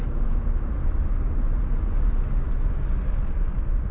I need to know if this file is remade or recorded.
recorded